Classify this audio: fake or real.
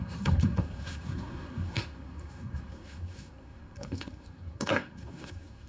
fake